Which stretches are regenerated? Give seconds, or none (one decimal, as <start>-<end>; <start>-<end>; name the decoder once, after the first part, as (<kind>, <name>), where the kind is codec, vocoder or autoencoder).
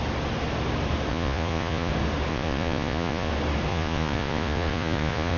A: 1.1-1.9 (vocoder, Vocos); 2.3-3.3; 3.7-5.4